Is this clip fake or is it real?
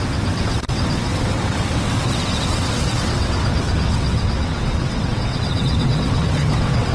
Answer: fake